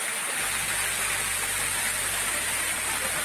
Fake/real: real